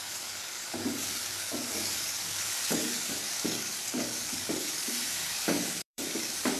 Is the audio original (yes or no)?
no